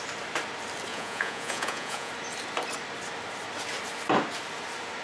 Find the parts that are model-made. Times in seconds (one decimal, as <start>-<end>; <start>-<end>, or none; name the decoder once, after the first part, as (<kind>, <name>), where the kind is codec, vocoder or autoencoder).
0.9-2.1 (vocoder, Vocos)

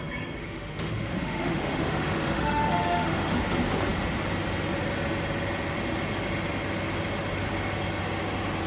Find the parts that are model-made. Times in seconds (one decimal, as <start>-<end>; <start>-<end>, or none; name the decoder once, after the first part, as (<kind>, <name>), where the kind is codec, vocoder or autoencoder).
0.4-3.4 (autoencoder, DAC-VAE)

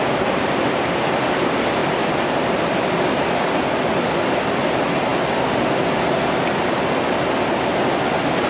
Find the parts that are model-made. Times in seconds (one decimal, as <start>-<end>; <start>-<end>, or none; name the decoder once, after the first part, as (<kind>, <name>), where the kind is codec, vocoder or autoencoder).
none

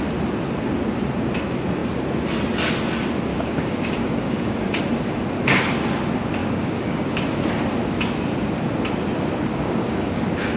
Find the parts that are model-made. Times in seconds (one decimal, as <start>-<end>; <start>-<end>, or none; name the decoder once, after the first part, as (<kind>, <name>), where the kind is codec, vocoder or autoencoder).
3.3-4.8 (codec, DAC); 6.4-7.2; 9.5-10.2